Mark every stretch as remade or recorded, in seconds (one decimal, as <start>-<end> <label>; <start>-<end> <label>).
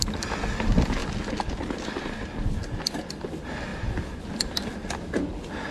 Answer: 0.0-5.7 recorded